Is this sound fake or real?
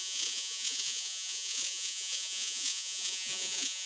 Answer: fake